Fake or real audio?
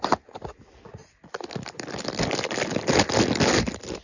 real